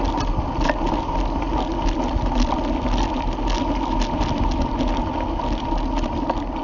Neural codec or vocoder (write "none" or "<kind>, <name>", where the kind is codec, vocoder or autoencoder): none